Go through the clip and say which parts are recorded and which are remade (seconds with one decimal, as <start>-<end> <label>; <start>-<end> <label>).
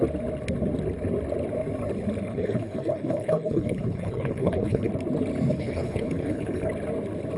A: 0.0-2.3 recorded; 2.3-4.9 remade; 4.9-5.5 recorded; 5.5-6.7 remade; 6.7-7.4 recorded